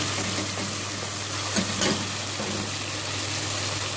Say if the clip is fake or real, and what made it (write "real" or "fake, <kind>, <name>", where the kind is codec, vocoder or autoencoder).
real